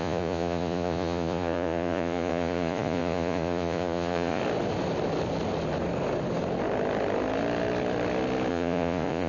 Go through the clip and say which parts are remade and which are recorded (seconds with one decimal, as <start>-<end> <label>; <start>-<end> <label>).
0.0-4.4 remade; 4.4-8.5 recorded; 8.5-9.3 remade